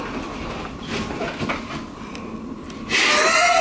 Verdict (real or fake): real